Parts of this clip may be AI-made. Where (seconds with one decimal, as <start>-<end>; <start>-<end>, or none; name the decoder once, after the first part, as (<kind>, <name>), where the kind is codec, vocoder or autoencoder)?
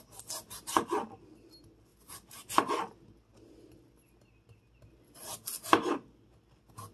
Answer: none